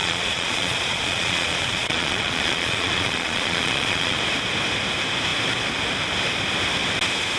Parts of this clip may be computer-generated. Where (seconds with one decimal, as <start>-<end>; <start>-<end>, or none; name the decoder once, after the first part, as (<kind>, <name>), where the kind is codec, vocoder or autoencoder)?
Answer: 0.0-4.2 (vocoder, Vocos)